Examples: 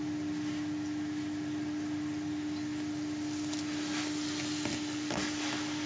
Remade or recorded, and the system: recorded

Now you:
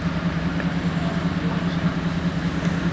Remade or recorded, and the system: recorded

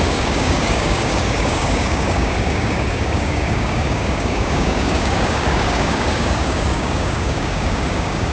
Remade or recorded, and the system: remade, codec, DAC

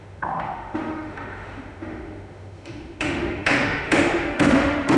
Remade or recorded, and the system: remade, autoencoder, DAC-VAE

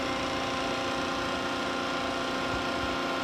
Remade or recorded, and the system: recorded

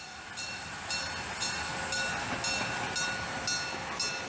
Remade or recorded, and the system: recorded